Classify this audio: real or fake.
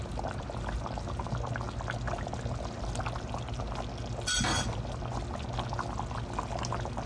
real